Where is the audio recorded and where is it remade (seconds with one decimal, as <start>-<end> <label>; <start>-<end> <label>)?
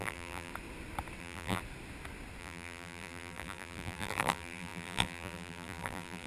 0.0-0.5 remade; 0.5-1.2 recorded; 1.2-1.6 remade; 1.6-2.4 recorded; 2.4-6.3 remade